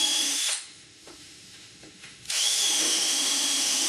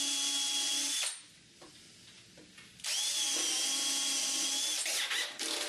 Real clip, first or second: second